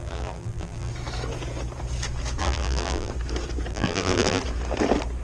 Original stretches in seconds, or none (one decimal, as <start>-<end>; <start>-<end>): 0.9-2.4; 3.1-3.7; 4.4-5.2